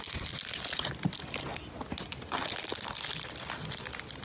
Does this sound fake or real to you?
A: real